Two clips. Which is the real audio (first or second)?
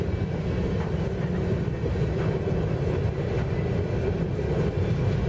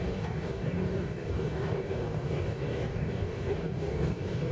first